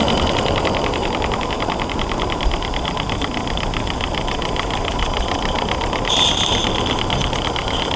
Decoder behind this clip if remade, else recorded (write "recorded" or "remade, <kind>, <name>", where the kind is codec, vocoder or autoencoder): remade, vocoder, BigVGAN v2